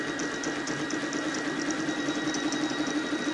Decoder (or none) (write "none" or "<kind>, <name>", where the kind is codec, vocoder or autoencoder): none